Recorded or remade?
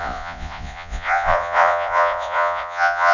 remade